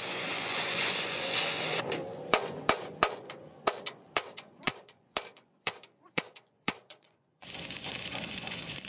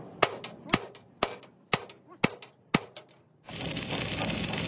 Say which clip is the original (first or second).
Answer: second